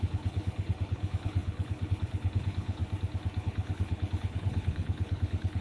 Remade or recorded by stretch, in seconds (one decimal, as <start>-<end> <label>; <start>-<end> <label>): 0.0-2.8 remade; 2.8-3.4 recorded; 3.4-5.6 remade